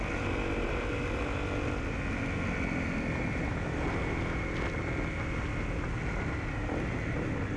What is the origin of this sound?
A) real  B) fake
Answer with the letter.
A